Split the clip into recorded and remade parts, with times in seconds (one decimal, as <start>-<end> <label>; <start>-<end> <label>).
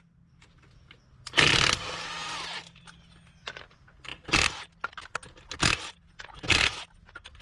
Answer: 0.0-2.2 recorded; 2.2-2.8 remade; 2.8-4.1 recorded; 4.1-4.7 remade; 4.7-7.4 recorded